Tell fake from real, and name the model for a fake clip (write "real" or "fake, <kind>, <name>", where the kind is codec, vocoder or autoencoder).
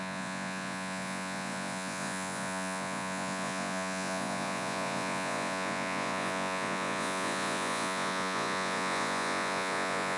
fake, vocoder, Vocos